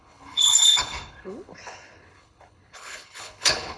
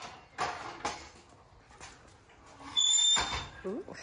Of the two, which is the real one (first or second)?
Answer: second